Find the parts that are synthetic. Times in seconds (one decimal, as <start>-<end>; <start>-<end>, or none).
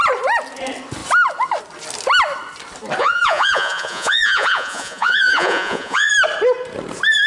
3.0-6.1